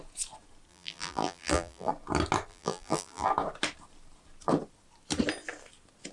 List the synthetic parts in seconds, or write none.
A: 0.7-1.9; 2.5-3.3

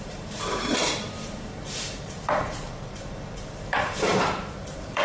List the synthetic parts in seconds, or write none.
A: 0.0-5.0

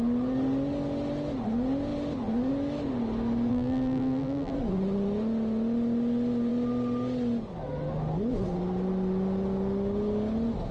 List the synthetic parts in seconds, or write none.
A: 3.5-4.5

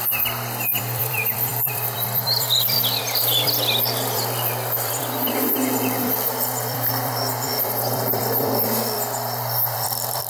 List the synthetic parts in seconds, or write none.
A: 0.0-10.3

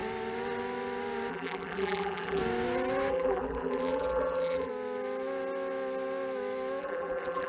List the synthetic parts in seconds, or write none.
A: 1.3-2.4; 3.1-4.7; 6.8-7.5

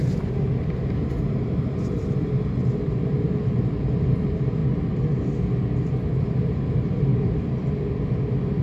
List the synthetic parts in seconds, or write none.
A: 0.0-4.6; 6.2-7.1